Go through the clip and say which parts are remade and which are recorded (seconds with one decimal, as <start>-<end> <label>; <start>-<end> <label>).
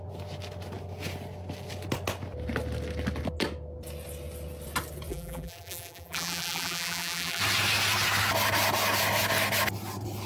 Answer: 0.0-5.1 recorded; 5.1-7.4 remade; 7.4-10.3 recorded